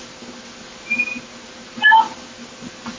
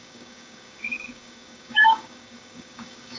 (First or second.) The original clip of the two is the first